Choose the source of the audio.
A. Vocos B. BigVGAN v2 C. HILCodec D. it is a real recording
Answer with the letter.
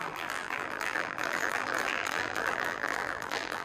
B